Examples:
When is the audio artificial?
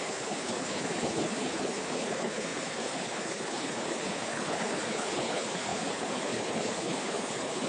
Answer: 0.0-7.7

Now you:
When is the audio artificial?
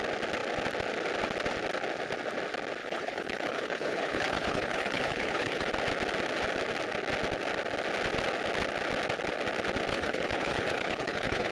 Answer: 2.8-5.7; 9.9-11.5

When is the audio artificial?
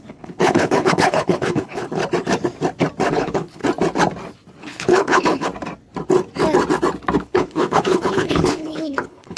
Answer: 0.0-2.0; 3.1-3.6; 4.6-5.5; 7.2-9.4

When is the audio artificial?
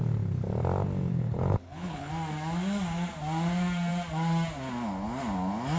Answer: 1.1-2.1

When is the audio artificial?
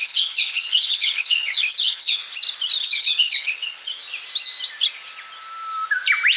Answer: 0.0-2.2; 2.8-4.0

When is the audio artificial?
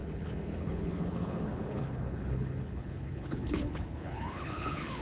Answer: 0.0-5.0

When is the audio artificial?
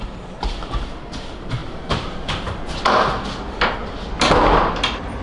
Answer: none